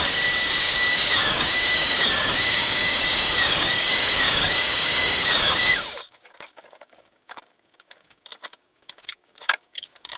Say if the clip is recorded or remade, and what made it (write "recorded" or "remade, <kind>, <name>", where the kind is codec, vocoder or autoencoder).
remade, codec, DAC